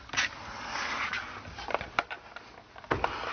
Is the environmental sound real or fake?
real